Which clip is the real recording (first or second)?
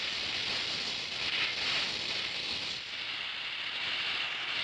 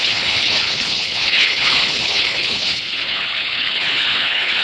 first